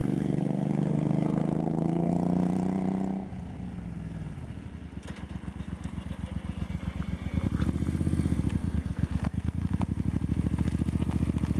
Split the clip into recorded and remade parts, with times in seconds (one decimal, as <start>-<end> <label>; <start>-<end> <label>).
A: 0.0-2.1 remade; 2.1-8.6 recorded; 8.6-9.6 remade; 9.6-11.6 recorded